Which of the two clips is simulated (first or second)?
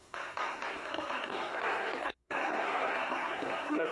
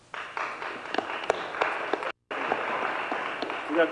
first